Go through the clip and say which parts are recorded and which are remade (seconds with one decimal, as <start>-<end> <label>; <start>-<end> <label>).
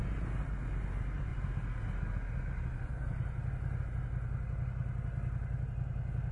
0.0-6.3 recorded